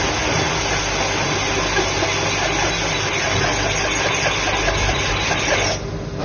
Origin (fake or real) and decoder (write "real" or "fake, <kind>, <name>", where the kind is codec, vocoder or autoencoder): real